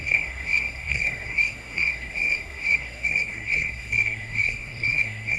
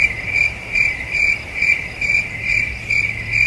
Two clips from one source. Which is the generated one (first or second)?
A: first